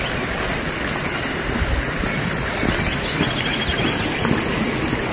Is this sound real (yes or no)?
yes